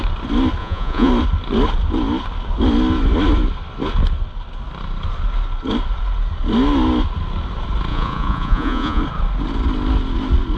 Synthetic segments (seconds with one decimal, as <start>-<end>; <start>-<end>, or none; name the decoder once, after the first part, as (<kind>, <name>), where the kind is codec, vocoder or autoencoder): 0.6-1.1 (vocoder, Vocos); 7.9-9.0